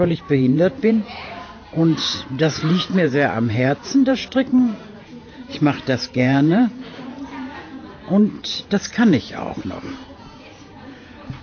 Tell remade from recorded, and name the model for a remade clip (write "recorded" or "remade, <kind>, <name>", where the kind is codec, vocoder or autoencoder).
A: remade, vocoder, Vocos